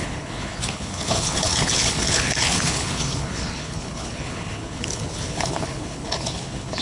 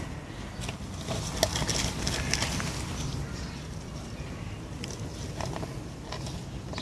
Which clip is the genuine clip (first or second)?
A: second